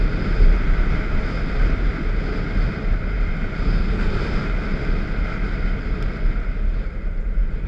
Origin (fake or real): real